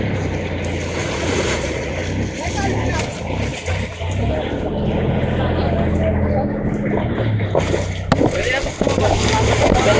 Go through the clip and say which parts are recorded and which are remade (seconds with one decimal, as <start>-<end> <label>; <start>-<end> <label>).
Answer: 0.0-1.0 recorded; 1.0-1.9 remade; 1.9-10.0 recorded